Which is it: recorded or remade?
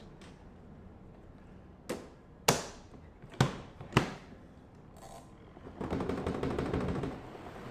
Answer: recorded